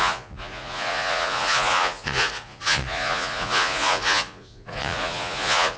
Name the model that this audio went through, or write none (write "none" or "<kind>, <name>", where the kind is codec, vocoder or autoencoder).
vocoder, Vocos